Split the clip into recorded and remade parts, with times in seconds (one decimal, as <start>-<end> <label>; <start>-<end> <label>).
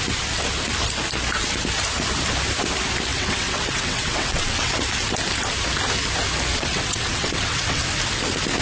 0.0-3.1 recorded; 3.1-4.7 remade; 4.7-6.5 recorded; 6.5-7.8 remade; 7.8-8.6 recorded